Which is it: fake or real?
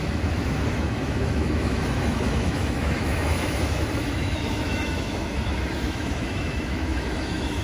fake